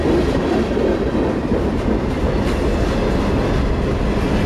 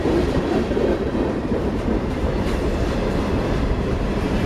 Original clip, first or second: first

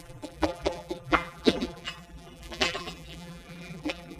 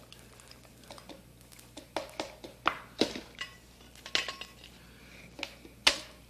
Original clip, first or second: second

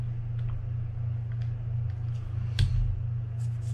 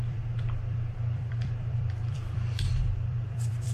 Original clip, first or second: first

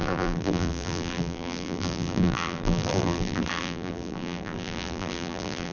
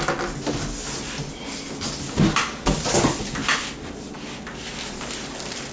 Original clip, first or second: second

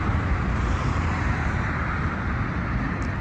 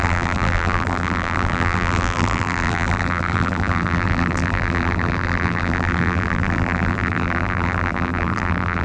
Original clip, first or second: first